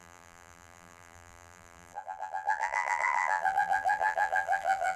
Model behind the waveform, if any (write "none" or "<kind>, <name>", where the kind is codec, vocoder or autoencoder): vocoder, BigVGAN v2